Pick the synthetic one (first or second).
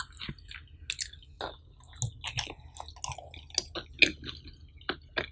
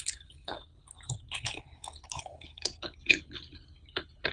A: second